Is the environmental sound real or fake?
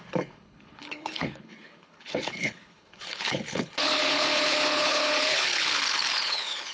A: fake